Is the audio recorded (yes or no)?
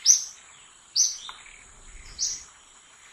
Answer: yes